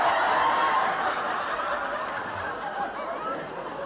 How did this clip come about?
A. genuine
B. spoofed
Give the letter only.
A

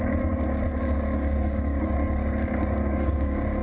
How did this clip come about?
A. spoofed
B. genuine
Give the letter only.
A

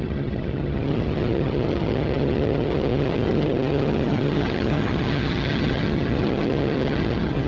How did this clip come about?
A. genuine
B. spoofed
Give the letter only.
B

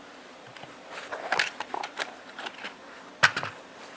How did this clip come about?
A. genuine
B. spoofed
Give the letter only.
A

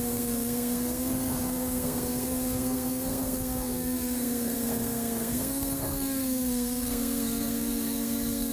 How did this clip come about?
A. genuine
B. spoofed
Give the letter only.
B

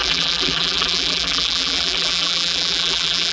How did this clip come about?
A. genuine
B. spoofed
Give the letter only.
B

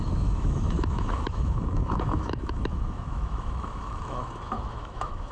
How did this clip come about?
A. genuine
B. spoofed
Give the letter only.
B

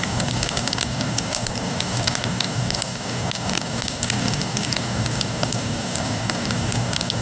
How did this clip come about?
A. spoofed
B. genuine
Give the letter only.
A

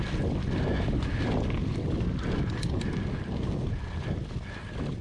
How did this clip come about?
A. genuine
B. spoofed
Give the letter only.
A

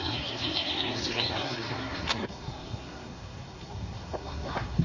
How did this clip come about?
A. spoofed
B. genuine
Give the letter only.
A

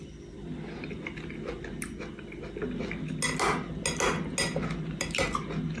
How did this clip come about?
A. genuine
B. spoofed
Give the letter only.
A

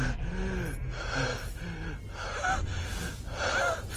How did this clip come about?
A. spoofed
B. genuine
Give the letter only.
B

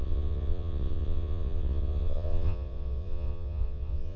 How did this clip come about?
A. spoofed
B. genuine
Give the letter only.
A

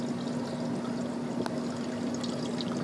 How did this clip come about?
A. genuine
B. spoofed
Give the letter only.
A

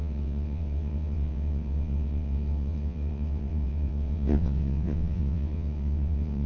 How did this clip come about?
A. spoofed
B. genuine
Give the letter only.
A